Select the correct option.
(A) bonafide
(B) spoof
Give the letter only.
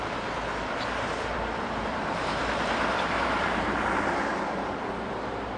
B